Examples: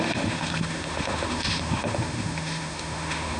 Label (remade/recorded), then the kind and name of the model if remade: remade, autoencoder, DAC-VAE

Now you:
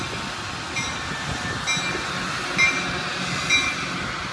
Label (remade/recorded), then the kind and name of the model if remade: recorded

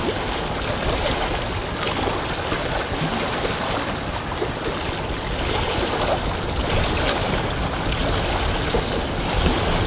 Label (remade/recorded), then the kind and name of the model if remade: recorded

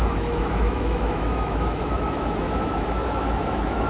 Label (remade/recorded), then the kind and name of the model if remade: remade, autoencoder, DAC-VAE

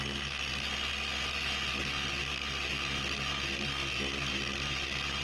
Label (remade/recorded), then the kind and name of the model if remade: recorded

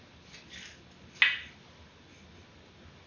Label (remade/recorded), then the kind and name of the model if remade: recorded